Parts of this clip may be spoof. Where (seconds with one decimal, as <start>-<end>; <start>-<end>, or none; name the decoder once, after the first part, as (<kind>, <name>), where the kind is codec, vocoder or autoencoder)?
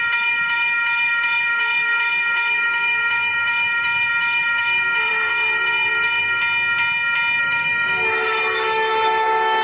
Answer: 0.0-6.4 (autoencoder, DAC-VAE); 7.4-9.6